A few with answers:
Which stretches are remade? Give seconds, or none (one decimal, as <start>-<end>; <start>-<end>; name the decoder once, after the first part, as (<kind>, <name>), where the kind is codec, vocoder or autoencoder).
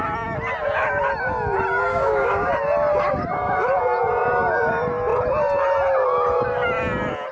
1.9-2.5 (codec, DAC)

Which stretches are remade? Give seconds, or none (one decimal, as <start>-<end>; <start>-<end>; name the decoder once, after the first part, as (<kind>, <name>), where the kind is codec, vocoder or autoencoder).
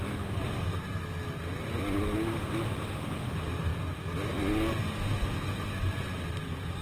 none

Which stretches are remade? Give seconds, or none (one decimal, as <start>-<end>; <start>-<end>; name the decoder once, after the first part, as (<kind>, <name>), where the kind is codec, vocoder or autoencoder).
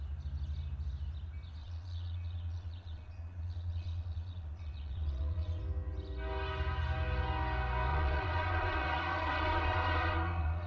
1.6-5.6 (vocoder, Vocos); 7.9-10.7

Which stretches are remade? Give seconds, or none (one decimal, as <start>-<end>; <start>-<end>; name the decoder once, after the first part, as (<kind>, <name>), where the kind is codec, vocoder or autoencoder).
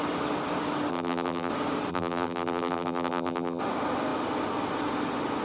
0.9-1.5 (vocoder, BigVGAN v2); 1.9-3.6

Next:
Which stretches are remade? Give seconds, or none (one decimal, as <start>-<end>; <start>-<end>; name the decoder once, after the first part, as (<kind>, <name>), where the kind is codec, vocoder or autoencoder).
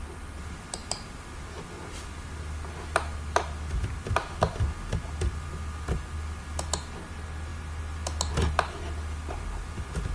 none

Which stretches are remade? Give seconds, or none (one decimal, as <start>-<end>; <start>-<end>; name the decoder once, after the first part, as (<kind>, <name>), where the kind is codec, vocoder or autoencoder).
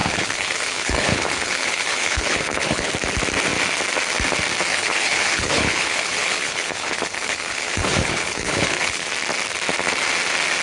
0.0-2.9 (codec, HILCodec); 4.7-9.1